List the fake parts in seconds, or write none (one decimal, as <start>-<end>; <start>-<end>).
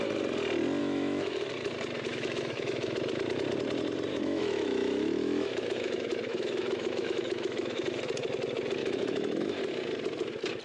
0.8-1.5; 2.1-3.1; 4.1-8.0; 8.8-9.6